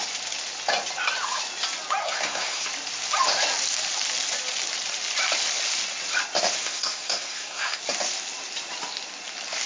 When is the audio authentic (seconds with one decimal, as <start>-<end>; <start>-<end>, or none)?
0.0-2.0; 2.7-6.6; 7.8-9.7